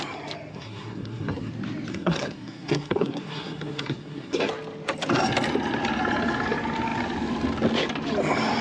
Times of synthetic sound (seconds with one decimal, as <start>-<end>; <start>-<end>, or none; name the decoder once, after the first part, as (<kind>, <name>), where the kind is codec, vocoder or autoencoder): 0.5-1.5 (codec, SNAC); 1.9-4.5